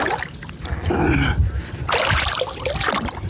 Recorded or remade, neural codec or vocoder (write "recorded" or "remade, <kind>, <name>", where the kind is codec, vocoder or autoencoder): recorded